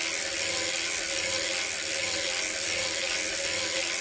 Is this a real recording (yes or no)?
yes